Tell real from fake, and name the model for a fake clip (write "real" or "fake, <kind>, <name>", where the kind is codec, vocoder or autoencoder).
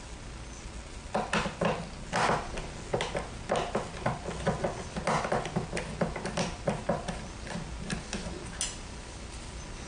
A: real